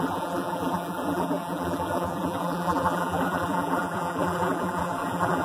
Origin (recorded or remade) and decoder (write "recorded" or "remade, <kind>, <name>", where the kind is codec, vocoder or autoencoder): remade, vocoder, BigVGAN v2